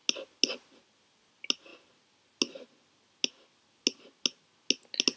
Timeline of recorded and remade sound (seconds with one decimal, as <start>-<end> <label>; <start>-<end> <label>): 0.0-5.2 recorded